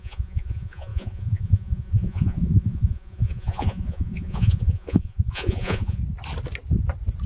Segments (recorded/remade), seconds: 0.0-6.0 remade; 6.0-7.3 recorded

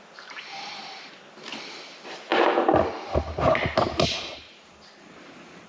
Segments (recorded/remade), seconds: 0.0-5.7 recorded

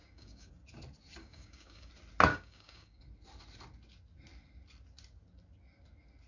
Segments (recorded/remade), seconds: 0.0-0.5 remade; 0.5-1.2 recorded; 1.2-1.9 remade; 1.9-2.3 recorded; 2.3-3.0 remade; 3.0-6.3 recorded

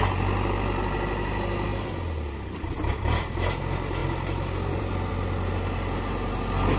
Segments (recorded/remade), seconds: 0.0-4.0 recorded; 4.0-5.1 remade; 5.1-6.8 recorded

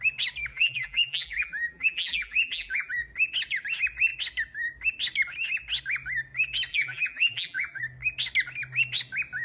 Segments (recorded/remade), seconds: 0.0-0.5 recorded; 0.5-2.9 remade; 2.9-6.7 recorded; 6.7-7.8 remade; 7.8-9.4 recorded

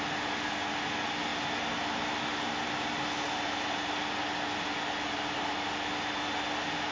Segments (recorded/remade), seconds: 0.0-6.9 recorded